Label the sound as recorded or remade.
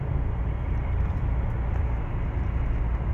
recorded